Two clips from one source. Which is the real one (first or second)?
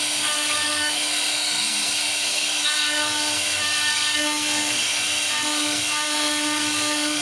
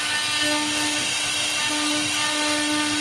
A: second